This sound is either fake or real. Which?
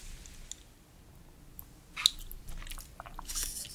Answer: real